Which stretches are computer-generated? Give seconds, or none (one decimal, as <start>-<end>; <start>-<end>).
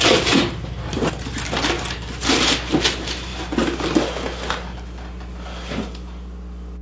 none